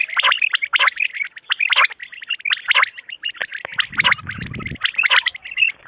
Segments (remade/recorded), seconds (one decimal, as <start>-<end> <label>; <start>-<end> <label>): 0.0-5.9 recorded